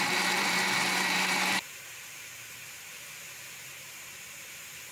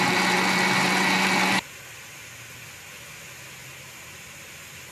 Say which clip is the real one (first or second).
second